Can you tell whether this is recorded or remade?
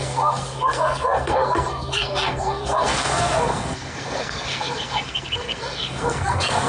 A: remade